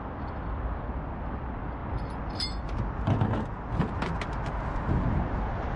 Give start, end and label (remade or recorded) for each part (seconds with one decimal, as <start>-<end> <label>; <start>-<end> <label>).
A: 0.0-5.8 recorded